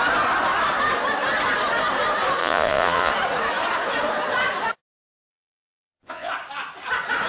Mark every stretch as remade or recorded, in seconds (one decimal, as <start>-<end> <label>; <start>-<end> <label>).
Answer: 0.0-2.4 recorded; 2.4-3.1 remade; 3.1-5.3 recorded; 5.3-6.3 remade; 6.3-7.3 recorded